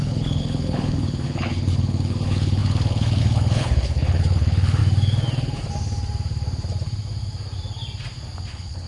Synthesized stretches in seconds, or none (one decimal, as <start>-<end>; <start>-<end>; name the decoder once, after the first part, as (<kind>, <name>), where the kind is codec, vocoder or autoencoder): 0.0-4.8 (codec, HILCodec); 8.5-8.9